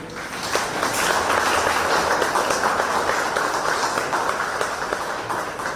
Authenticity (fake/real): real